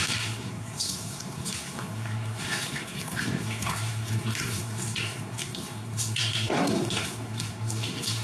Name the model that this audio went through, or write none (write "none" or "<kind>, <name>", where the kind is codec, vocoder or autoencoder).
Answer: codec, SNAC